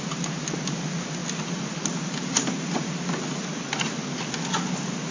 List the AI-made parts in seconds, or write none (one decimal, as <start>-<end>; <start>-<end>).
none